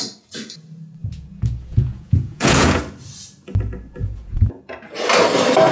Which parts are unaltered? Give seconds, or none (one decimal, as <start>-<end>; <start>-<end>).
0.0-1.0; 2.8-4.0; 4.6-5.7